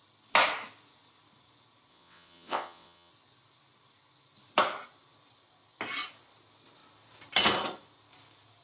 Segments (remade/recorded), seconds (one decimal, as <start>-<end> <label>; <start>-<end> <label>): 0.0-1.9 recorded; 1.9-3.1 remade; 3.1-8.6 recorded